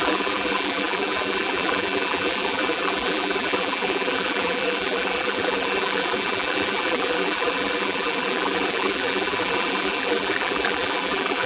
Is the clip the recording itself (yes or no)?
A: no